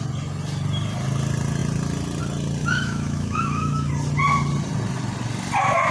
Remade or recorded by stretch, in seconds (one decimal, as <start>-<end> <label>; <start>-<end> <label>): 0.0-2.6 recorded; 2.6-3.9 remade; 3.9-5.9 recorded